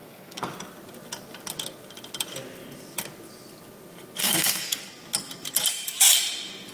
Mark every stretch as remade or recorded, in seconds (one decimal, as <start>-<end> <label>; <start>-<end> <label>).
0.0-0.5 remade; 0.5-4.2 recorded; 4.2-4.8 remade; 4.8-6.7 recorded